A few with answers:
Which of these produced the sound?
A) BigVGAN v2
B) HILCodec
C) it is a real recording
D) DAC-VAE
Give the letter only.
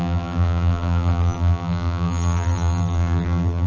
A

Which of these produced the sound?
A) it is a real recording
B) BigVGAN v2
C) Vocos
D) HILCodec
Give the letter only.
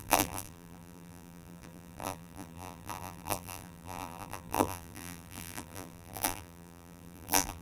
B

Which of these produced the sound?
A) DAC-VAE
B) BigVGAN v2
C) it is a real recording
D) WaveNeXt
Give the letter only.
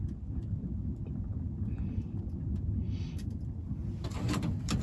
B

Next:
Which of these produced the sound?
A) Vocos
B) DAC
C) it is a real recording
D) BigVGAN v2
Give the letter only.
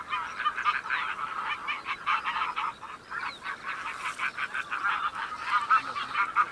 C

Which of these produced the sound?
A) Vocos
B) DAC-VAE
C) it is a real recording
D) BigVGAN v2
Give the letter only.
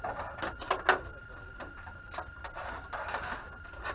C